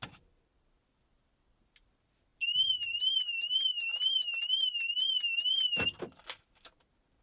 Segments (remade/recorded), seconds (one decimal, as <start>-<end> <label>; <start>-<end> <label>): 0.0-7.2 recorded